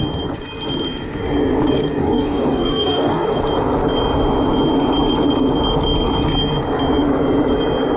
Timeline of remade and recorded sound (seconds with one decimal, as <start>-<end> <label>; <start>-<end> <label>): 0.0-2.0 recorded; 2.0-3.4 remade; 3.4-8.0 recorded